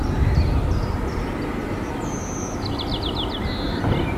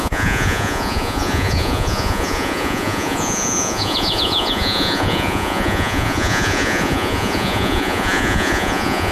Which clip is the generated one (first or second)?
second